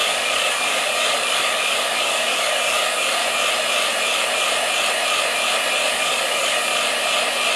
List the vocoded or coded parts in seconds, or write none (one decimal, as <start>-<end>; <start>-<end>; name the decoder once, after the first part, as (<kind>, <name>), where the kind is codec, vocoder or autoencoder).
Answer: 0.0-3.2 (codec, DAC); 5.9-6.7

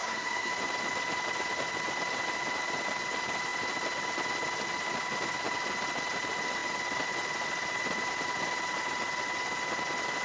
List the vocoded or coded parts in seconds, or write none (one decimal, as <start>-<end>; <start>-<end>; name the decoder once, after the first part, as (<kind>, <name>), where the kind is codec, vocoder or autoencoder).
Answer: 0.0-0.5 (codec, SNAC)

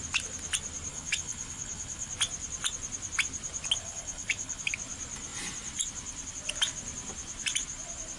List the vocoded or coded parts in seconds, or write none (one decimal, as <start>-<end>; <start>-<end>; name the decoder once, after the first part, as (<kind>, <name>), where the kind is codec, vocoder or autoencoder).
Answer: 0.9-2.1 (codec, HILCodec); 3.8-4.6

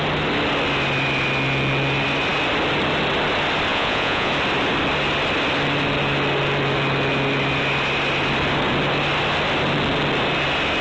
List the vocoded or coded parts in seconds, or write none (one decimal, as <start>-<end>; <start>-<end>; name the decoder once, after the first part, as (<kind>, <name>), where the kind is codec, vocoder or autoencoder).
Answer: 3.7-4.3 (vocoder, Vocos)